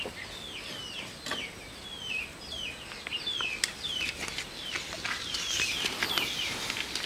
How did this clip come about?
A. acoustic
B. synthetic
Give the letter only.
A